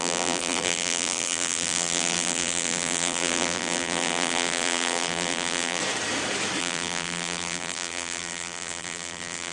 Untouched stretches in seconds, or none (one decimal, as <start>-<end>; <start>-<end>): 5.8-6.6